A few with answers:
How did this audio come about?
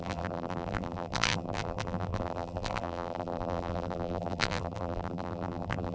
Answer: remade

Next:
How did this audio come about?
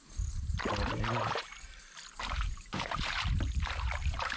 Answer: remade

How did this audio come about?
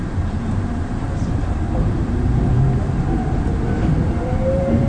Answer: remade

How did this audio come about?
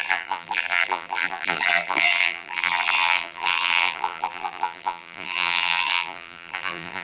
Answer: remade